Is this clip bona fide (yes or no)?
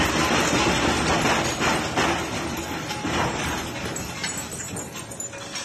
yes